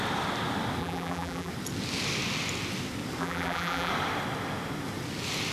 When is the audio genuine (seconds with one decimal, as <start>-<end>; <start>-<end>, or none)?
0.0-0.8; 1.5-3.2; 3.9-5.5

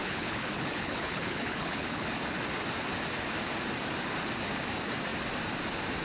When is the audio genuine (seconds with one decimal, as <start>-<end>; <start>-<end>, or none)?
2.1-6.0

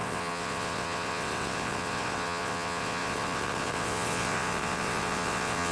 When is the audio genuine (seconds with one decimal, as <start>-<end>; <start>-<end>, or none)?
none

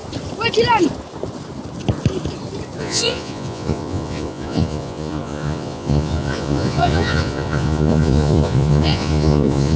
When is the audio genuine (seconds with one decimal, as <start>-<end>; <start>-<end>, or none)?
0.0-2.8

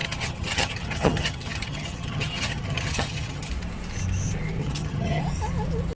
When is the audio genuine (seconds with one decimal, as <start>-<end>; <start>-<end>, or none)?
3.5-4.6; 5.2-5.9

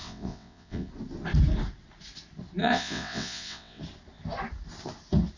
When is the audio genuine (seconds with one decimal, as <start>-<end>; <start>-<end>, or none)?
0.9-2.6; 3.8-5.4